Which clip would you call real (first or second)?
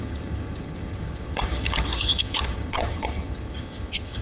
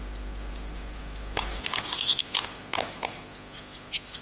second